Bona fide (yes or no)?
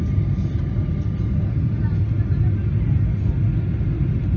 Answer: yes